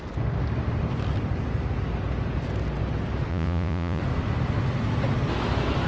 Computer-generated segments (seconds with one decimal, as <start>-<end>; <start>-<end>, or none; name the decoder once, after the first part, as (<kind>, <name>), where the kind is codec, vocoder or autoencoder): 3.3-4.0 (vocoder, Vocos)